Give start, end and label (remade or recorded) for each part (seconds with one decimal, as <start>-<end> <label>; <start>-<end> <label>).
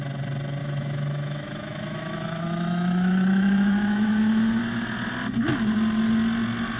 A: 0.0-0.6 recorded; 0.6-4.6 remade; 4.6-6.8 recorded